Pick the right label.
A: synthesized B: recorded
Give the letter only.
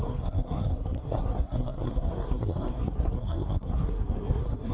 A